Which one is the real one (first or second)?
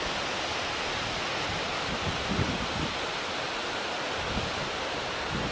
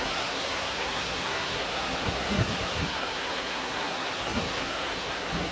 first